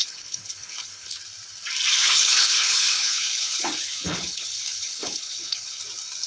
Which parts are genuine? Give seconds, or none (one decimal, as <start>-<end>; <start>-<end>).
1.2-2.0; 5.8-6.3